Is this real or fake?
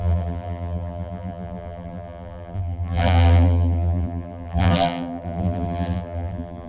fake